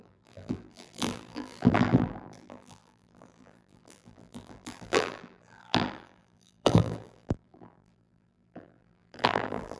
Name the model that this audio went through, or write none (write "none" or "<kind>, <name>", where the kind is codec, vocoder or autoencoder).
vocoder, BigVGAN v2